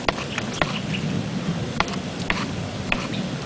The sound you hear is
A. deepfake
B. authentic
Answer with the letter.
B